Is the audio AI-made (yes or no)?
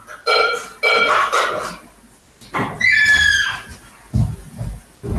no